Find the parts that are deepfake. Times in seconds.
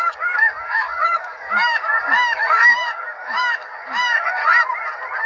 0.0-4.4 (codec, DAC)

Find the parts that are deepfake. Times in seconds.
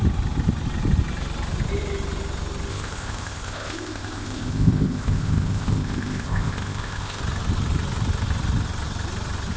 2.7-7.2 (codec, ZipCodec)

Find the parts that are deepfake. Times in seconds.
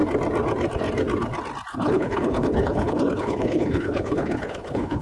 1.7-5.0 (codec, HILCodec)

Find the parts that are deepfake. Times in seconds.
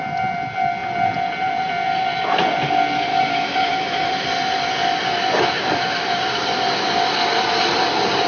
3.1-4.1 (autoencoder, DAC-VAE)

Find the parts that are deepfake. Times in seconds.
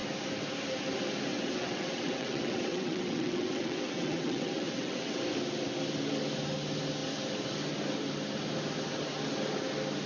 1.3-5.2 (vocoder, WaveNeXt)